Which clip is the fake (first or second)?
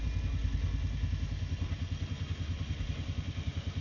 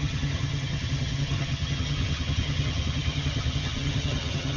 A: second